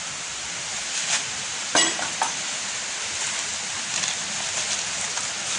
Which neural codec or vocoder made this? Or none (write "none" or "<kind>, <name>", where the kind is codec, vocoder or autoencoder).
none